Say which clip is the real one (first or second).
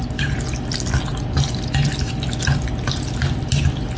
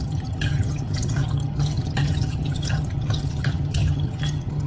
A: first